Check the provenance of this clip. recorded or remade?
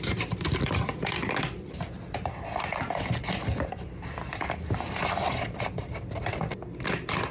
remade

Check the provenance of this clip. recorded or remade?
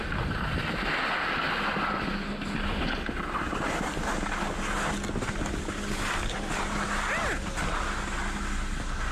recorded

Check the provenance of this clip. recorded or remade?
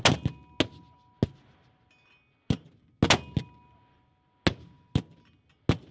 recorded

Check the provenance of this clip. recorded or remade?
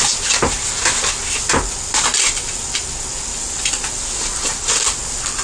recorded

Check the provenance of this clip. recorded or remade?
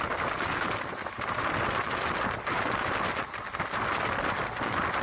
recorded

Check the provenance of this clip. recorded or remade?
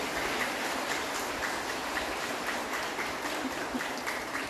remade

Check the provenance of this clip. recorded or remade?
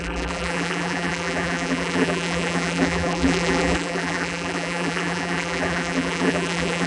remade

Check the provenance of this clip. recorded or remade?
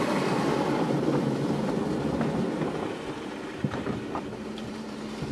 remade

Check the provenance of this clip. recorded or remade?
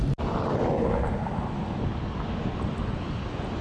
recorded